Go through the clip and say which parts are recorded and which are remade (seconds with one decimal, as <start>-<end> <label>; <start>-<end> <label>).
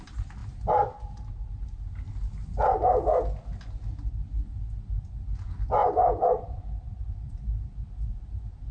0.0-5.8 recorded; 5.8-7.1 remade; 7.1-8.7 recorded